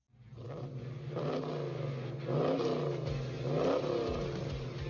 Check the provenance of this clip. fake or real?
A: real